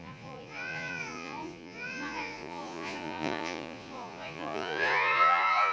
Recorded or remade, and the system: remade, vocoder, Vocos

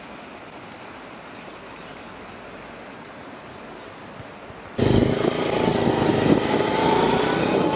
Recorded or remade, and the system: recorded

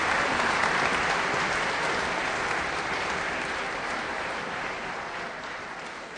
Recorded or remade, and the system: recorded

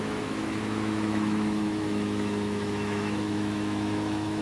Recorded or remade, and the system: remade, autoencoder, DAC-VAE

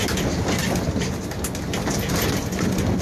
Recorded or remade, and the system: recorded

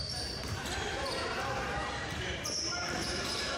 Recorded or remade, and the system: remade, vocoder, BigVGAN v2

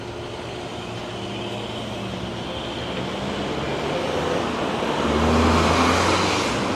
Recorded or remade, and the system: recorded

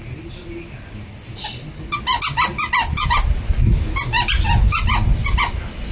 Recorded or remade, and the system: recorded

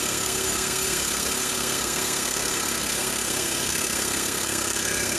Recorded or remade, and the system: remade, codec, SNAC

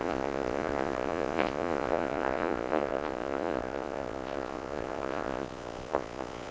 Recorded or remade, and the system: remade, vocoder, Vocos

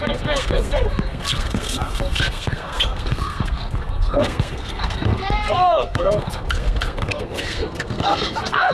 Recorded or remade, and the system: remade, codec, SNAC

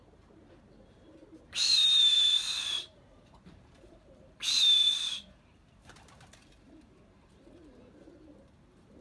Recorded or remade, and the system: remade, vocoder, BigVGAN v2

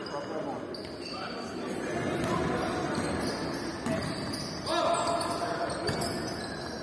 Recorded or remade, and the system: recorded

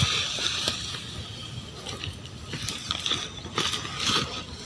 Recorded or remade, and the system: recorded